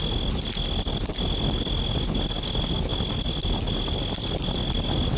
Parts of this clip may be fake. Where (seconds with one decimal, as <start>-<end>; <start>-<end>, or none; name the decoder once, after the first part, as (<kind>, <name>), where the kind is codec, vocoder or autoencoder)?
none